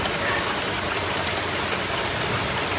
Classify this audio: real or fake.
real